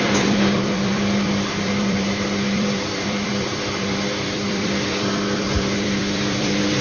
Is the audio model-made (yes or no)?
yes